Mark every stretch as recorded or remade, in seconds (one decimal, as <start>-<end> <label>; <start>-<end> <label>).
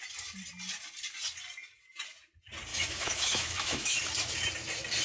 0.0-2.7 recorded; 2.7-4.0 remade; 4.0-5.0 recorded